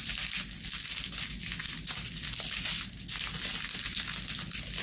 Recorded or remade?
recorded